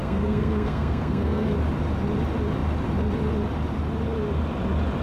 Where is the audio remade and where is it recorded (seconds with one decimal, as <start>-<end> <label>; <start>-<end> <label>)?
0.0-1.5 remade; 1.5-5.0 recorded